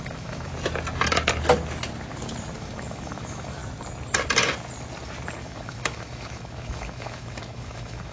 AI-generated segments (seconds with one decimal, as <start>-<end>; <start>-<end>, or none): 0.0-0.5; 2.6-3.6; 5.4-8.1